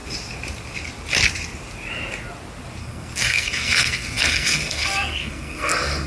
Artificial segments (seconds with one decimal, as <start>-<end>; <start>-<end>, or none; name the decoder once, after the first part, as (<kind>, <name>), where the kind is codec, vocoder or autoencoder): 2.8-6.1 (codec, SNAC)